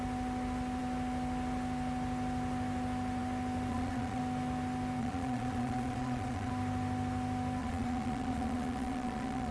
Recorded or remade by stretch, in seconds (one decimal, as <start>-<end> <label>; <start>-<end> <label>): 0.0-3.7 recorded; 3.7-4.2 remade; 4.2-5.0 recorded; 5.0-6.5 remade; 6.5-7.6 recorded; 7.6-9.5 remade